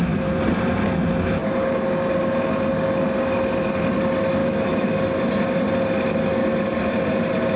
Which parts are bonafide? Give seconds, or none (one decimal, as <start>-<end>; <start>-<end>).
0.0-4.4; 4.9-7.6